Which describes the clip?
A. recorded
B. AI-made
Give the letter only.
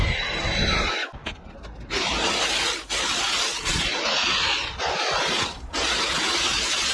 A